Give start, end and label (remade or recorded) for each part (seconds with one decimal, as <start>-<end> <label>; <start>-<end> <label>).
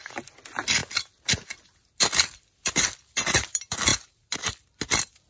0.0-5.3 recorded